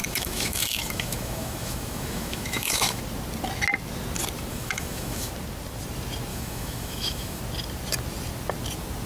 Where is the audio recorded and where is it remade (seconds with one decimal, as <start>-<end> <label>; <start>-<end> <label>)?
0.0-3.0 remade; 3.0-4.5 recorded; 4.5-5.3 remade; 5.3-6.3 recorded; 6.3-7.4 remade; 7.4-9.1 recorded